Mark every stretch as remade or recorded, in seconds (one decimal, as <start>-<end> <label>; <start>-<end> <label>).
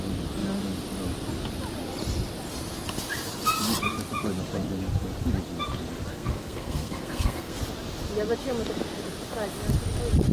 0.0-6.1 recorded; 6.1-7.6 remade; 7.6-10.3 recorded